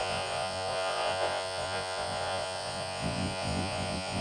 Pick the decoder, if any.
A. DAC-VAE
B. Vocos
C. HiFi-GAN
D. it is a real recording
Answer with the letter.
B